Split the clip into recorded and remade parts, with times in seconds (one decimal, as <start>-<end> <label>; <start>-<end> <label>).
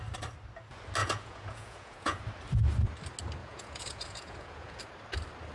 0.0-1.0 recorded; 1.0-2.2 remade; 2.2-3.4 recorded; 3.4-4.8 remade; 4.8-5.5 recorded